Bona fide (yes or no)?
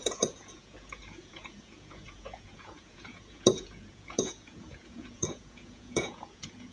no